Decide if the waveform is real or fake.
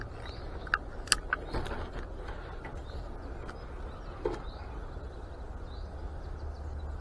real